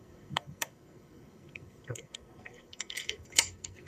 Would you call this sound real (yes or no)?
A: no